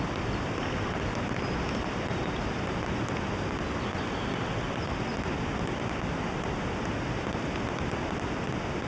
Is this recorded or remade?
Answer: recorded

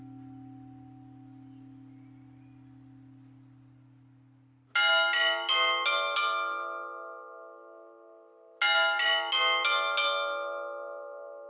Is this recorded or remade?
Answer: recorded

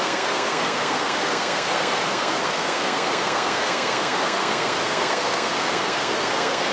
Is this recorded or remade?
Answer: remade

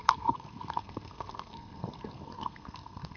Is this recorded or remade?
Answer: remade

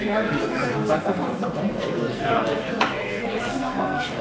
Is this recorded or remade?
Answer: remade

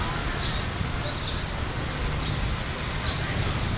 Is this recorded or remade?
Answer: recorded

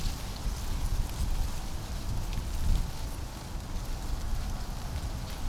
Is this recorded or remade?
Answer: recorded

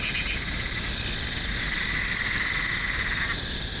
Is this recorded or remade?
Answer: recorded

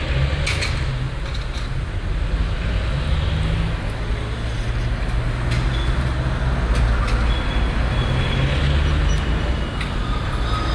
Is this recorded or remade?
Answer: recorded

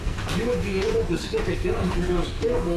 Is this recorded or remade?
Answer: remade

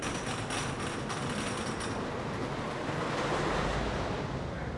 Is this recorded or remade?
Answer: recorded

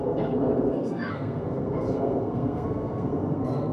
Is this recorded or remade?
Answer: remade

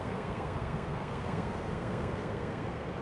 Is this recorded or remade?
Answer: remade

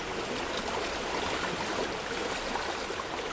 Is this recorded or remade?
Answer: recorded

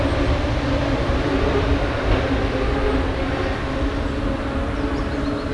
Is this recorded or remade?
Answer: recorded